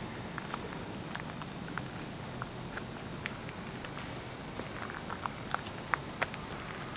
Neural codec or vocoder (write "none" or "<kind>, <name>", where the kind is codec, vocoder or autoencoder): none